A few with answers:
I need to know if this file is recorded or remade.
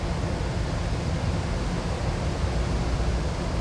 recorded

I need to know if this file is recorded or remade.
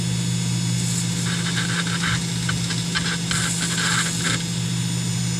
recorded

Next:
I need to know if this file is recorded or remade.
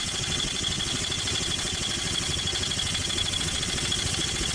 remade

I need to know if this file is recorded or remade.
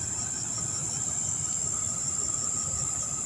recorded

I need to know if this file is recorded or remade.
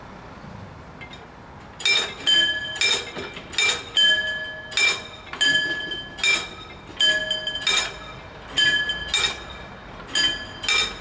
recorded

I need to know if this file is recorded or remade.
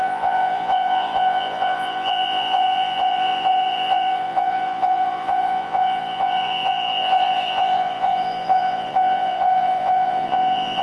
remade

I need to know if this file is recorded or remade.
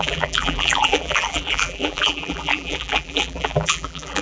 remade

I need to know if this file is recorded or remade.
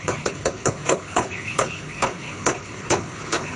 remade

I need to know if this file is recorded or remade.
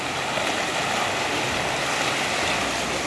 recorded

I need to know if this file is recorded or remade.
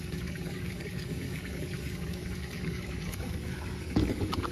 remade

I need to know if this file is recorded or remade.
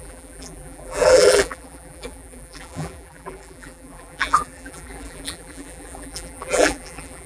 remade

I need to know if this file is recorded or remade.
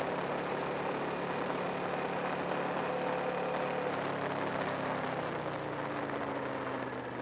recorded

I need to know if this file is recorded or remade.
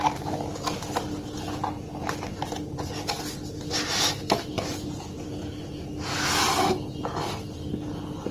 recorded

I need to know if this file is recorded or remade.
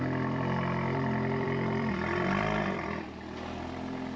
remade